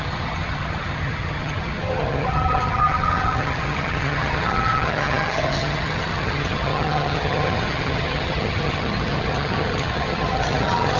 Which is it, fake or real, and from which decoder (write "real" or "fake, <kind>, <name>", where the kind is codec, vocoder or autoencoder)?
fake, vocoder, HiFi-GAN